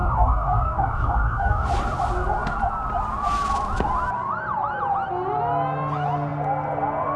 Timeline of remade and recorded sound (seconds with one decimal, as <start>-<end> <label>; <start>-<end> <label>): 0.0-1.7 remade; 1.7-7.2 recorded